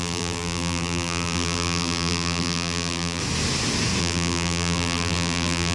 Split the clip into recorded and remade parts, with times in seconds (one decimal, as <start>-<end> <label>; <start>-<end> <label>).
0.0-3.2 remade; 3.2-4.0 recorded; 4.0-5.7 remade